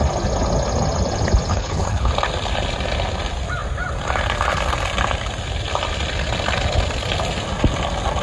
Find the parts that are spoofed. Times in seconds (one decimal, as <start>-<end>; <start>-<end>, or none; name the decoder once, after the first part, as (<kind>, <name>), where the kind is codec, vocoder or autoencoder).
1.5-2.1 (codec, HILCodec)